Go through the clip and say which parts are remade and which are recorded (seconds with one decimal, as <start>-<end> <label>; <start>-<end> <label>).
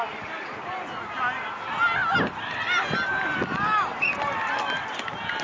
0.0-5.4 recorded